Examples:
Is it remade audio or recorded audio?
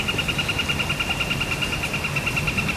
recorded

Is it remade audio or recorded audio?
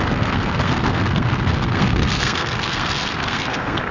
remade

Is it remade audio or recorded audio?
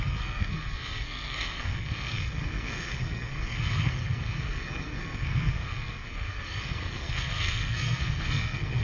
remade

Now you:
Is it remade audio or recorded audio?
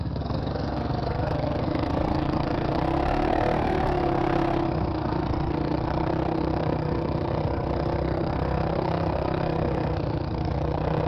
remade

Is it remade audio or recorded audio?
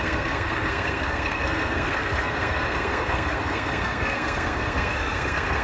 remade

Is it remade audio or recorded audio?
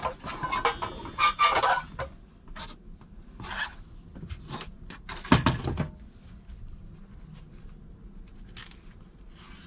recorded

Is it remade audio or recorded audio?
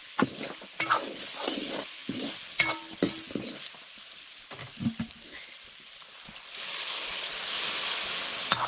recorded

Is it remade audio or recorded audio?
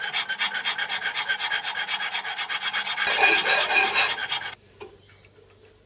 recorded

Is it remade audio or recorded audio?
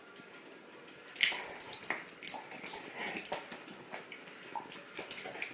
recorded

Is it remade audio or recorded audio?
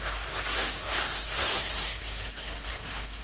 remade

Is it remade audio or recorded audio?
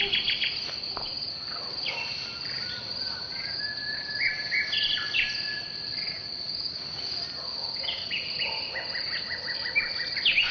recorded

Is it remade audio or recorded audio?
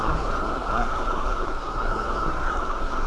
remade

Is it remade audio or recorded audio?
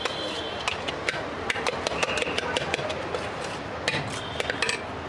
recorded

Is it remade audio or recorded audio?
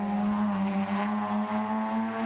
recorded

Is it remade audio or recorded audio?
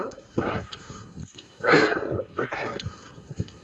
remade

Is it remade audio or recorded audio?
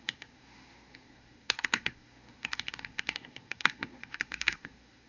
remade